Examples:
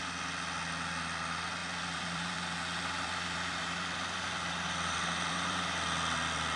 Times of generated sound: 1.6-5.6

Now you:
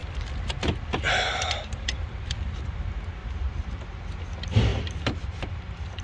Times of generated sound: 3.2-3.8; 4.7-6.0

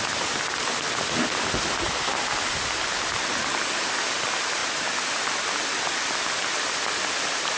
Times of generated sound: none